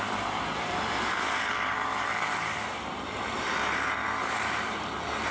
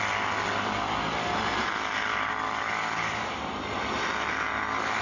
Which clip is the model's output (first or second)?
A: first